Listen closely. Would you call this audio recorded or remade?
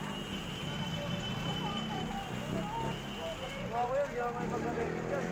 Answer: recorded